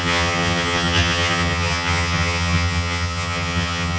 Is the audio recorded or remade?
remade